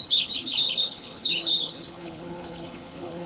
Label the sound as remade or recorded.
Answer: remade